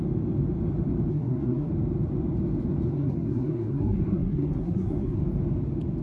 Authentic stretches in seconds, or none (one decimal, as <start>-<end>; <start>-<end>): 0.0-1.1; 1.7-2.9; 5.2-6.0